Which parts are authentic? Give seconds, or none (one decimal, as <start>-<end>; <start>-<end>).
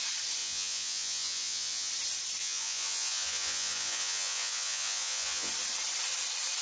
0.0-0.4; 1.9-2.4; 5.5-6.6